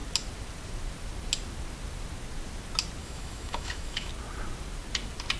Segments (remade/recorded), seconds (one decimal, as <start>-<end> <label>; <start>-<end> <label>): 0.0-3.0 recorded; 3.0-4.1 remade; 4.1-5.4 recorded